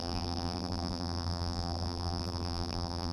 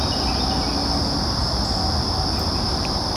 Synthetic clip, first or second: first